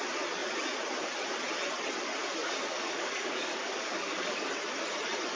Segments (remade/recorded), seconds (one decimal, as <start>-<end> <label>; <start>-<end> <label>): 0.0-2.4 recorded; 2.4-4.5 remade; 4.5-5.4 recorded